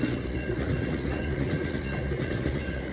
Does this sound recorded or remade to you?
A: remade